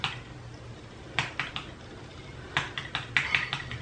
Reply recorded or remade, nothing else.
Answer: recorded